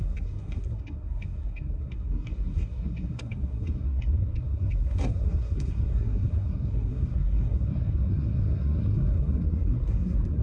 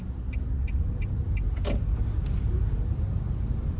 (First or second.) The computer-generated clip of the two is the first